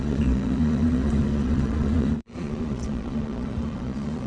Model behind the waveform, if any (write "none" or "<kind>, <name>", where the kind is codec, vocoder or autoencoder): vocoder, Vocos